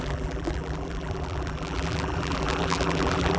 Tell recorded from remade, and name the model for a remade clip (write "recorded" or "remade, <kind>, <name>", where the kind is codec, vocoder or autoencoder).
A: remade, vocoder, BigVGAN v2